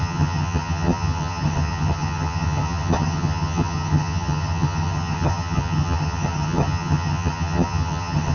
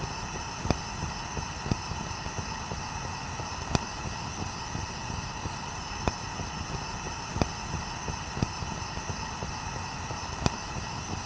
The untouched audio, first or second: second